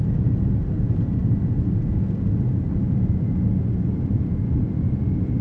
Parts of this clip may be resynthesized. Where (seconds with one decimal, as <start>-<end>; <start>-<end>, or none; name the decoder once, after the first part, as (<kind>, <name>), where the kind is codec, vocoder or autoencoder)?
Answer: none